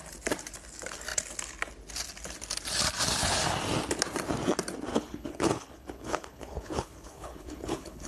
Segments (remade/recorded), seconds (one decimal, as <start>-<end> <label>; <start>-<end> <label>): 0.0-4.9 recorded; 4.9-8.1 remade